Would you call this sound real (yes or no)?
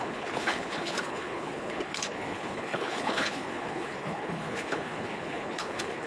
no